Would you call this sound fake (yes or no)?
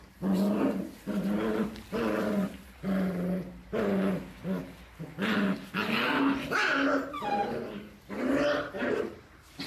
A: no